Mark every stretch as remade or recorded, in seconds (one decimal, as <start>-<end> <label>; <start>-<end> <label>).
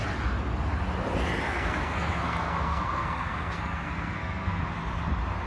0.0-1.5 recorded; 1.5-4.6 remade; 4.6-5.5 recorded